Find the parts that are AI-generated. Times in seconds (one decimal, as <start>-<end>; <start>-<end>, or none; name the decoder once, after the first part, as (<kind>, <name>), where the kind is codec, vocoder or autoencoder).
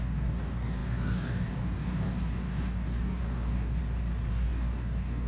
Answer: 0.0-3.8 (codec, DAC); 4.3-5.3